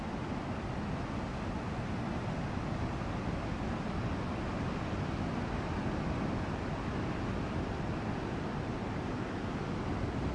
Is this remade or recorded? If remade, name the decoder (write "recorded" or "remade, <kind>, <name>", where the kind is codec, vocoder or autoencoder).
recorded